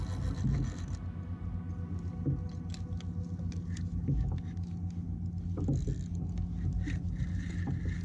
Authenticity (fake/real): real